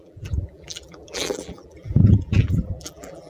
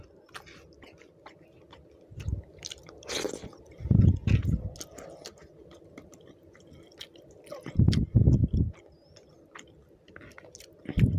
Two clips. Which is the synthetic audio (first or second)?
first